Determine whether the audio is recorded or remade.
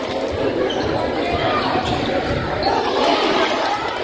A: recorded